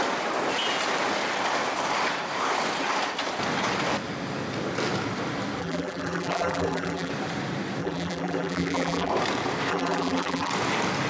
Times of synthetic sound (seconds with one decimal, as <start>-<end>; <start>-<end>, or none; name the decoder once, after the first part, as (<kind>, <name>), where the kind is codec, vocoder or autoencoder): 5.6-7.1 (vocoder, BigVGAN v2); 7.8-9.1; 9.7-10.5